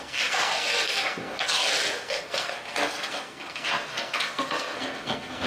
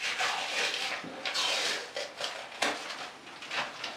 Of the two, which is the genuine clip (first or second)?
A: second